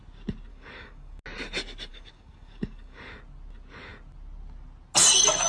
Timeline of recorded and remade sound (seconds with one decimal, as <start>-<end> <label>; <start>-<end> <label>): 0.0-0.5 recorded; 0.5-1.2 remade; 1.2-1.9 recorded; 1.9-3.1 remade; 3.1-5.5 recorded

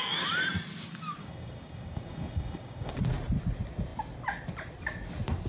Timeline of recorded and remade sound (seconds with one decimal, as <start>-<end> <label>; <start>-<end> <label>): 0.0-1.2 recorded; 1.2-2.9 remade; 2.9-5.5 recorded